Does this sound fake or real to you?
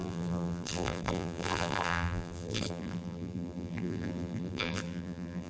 fake